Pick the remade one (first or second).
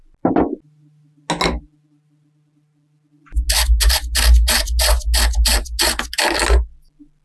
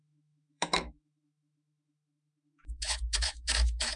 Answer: second